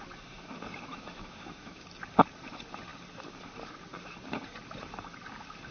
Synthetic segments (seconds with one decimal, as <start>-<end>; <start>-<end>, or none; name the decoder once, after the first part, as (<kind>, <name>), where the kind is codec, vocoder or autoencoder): 0.9-1.8 (autoencoder, DAC-VAE)